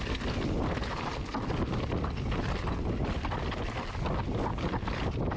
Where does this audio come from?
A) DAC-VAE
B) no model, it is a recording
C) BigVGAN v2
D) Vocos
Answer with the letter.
B